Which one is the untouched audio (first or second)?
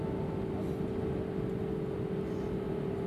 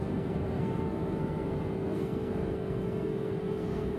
first